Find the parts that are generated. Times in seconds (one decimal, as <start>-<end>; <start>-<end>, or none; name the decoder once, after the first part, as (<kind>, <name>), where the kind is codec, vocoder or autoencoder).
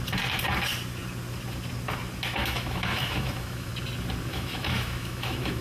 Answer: 2.4-3.7 (autoencoder, DAC-VAE); 4.3-5.6